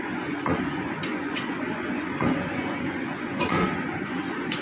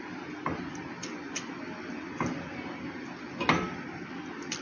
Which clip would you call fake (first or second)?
first